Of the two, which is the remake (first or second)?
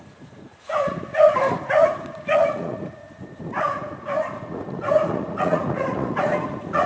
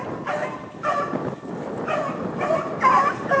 first